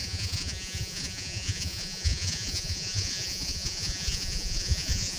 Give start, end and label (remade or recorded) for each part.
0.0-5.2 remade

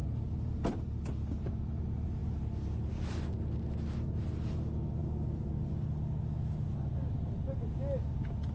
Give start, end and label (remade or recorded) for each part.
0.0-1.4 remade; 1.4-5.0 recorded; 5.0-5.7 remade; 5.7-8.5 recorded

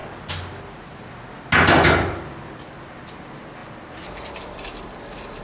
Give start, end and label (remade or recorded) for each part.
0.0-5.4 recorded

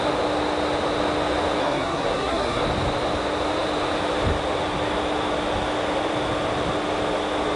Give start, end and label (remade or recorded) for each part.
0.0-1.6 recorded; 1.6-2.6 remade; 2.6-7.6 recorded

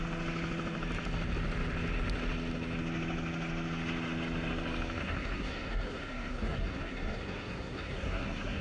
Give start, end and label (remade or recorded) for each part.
0.0-5.0 recorded; 5.0-8.6 remade

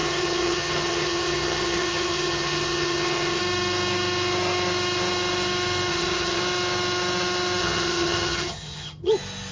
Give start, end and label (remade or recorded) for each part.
0.0-3.4 remade; 3.4-5.9 recorded; 5.9-6.4 remade; 6.4-7.6 recorded; 7.6-9.1 remade; 9.1-9.5 recorded

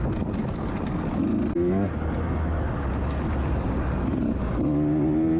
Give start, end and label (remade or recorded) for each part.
0.0-5.4 recorded

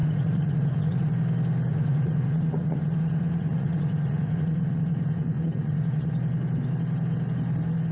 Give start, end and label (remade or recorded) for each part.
0.0-1.1 remade; 1.1-1.7 recorded; 1.7-6.1 remade; 6.1-7.9 recorded